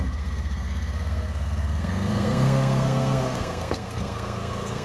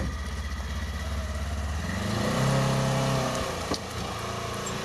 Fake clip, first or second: first